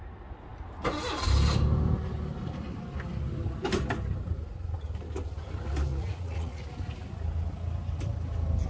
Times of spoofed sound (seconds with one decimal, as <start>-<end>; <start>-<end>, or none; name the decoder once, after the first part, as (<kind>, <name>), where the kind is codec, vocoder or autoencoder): 5.9-6.7 (vocoder, Vocos)